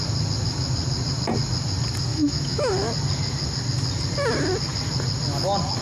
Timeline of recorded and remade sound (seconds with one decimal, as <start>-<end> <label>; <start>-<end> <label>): 0.0-2.1 recorded; 2.1-2.7 remade; 2.7-5.8 recorded